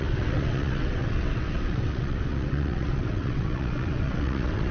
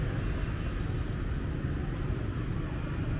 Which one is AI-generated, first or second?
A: first